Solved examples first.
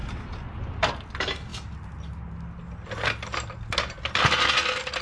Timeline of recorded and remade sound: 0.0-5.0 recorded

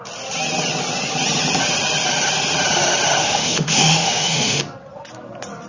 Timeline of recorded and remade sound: 0.0-3.2 recorded; 3.2-4.6 remade; 4.6-5.7 recorded

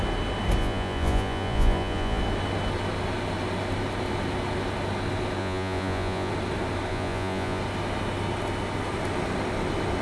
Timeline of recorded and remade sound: 0.0-0.6 recorded; 0.6-2.2 remade; 2.2-5.4 recorded; 5.4-6.3 remade; 6.3-6.9 recorded; 6.9-7.6 remade; 7.6-10.0 recorded

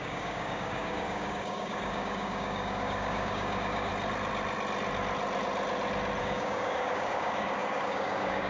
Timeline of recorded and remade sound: 0.0-3.9 remade; 3.9-6.2 recorded; 6.2-8.5 remade

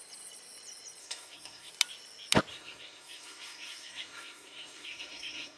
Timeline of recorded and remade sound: 0.0-1.0 recorded; 1.0-1.7 remade; 1.7-2.5 recorded; 2.5-5.6 remade

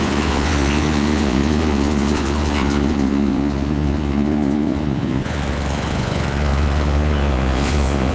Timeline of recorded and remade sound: 0.0-8.1 remade

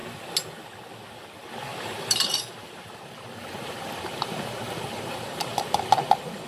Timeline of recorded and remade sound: 0.0-1.7 recorded; 1.7-5.5 remade; 5.5-6.5 recorded